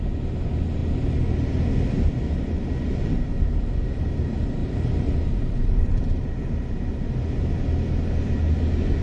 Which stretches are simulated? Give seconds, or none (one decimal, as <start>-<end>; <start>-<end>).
4.6-6.3